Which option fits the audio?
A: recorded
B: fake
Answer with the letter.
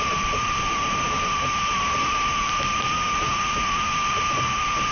A